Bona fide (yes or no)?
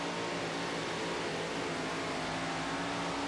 yes